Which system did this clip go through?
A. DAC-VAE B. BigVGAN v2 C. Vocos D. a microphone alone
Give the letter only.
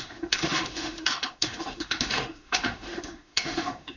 A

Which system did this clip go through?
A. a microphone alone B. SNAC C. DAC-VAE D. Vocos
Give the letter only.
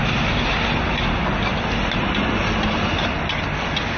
A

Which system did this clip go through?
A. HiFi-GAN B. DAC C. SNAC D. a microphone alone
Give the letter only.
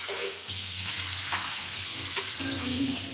C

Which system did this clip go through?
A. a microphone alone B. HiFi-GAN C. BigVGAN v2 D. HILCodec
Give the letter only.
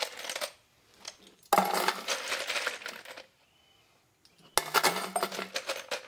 A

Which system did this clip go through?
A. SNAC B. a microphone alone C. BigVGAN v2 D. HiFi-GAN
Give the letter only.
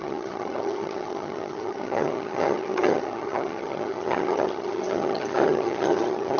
D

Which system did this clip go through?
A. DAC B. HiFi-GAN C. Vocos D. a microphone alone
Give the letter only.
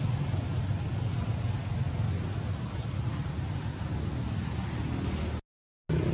D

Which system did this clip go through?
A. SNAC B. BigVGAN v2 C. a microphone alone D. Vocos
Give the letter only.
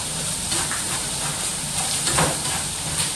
B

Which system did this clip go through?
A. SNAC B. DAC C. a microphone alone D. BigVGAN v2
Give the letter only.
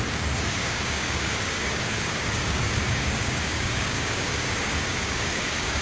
B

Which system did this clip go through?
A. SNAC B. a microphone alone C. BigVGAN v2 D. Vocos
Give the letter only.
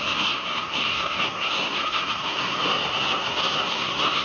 A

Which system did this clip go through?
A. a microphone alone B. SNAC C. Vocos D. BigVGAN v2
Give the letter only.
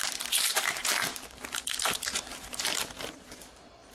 D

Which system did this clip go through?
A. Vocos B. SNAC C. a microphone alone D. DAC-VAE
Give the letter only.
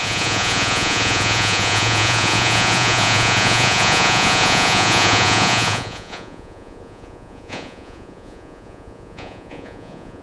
A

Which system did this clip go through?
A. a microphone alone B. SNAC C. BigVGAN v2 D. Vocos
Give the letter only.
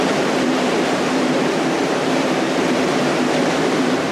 C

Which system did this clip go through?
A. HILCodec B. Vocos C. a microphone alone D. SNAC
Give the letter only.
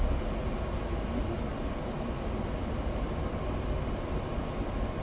C